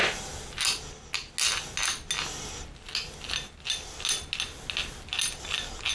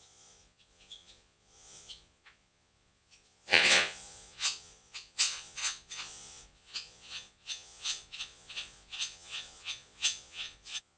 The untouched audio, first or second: first